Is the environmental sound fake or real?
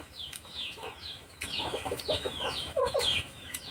fake